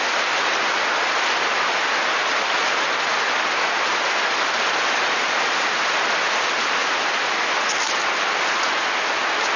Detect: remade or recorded recorded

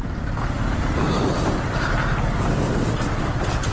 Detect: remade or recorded recorded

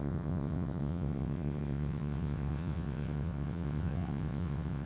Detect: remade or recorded remade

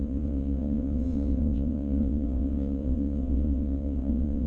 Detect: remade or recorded remade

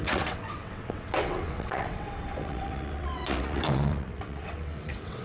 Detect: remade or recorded remade